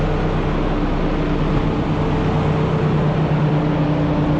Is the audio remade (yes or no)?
no